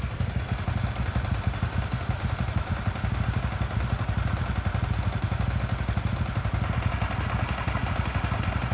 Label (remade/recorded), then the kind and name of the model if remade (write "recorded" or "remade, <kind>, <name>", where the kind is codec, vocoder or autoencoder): recorded